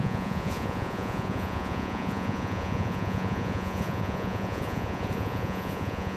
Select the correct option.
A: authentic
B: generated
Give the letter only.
B